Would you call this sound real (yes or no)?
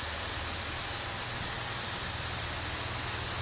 yes